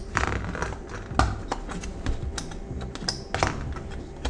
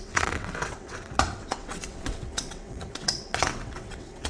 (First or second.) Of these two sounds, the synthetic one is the second